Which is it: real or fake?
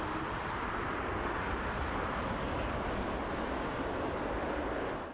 real